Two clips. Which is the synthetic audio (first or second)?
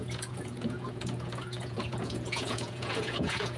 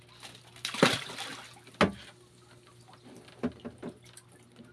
first